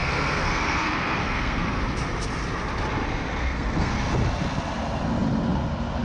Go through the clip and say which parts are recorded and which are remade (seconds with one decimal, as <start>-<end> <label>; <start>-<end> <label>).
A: 0.0-1.8 remade; 1.8-3.3 recorded; 3.3-4.1 remade; 4.1-6.0 recorded